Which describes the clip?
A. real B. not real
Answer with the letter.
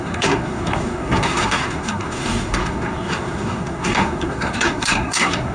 B